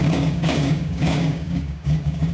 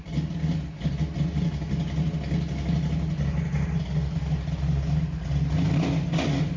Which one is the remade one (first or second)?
first